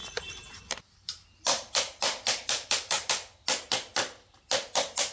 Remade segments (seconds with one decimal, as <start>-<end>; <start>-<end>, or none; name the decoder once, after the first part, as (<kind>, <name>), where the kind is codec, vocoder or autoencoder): 0.0-3.1 (vocoder, BigVGAN v2)